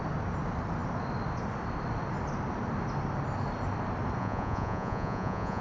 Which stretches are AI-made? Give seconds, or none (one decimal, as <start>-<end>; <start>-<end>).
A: 4.2-5.6